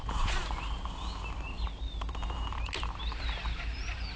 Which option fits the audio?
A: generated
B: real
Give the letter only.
B